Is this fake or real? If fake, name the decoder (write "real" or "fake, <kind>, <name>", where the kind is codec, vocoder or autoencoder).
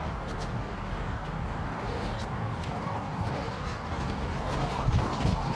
fake, codec, DAC